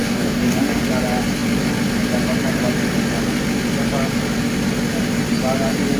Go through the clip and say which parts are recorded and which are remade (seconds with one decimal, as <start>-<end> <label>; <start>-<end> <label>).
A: 0.0-0.8 remade; 0.8-6.0 recorded